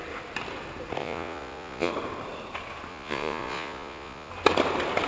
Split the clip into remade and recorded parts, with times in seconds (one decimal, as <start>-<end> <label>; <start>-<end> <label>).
0.0-1.0 recorded; 1.0-1.9 remade; 1.9-2.9 recorded; 2.9-4.3 remade; 4.3-5.1 recorded